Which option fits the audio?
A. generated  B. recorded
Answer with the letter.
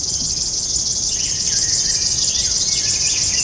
B